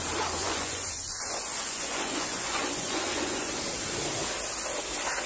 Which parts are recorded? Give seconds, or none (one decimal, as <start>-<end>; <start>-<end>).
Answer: 0.0-0.4; 3.6-5.3